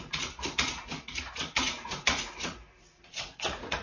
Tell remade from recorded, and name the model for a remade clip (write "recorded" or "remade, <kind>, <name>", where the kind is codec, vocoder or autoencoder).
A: remade, vocoder, Vocos